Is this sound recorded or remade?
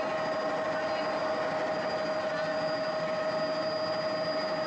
recorded